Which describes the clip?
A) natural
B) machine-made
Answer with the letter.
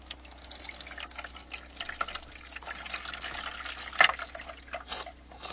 A